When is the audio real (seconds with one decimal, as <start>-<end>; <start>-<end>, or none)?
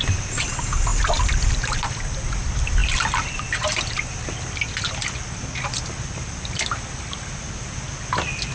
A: 0.0-8.5